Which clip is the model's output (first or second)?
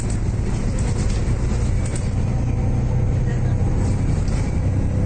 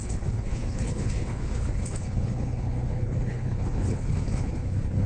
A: second